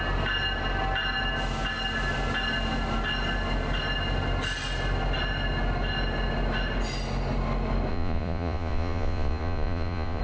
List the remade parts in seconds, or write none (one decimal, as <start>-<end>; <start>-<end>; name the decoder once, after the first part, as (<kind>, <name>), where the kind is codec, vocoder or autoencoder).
7.9-10.2 (vocoder, Vocos)